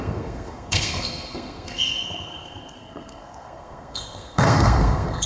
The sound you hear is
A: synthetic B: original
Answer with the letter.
A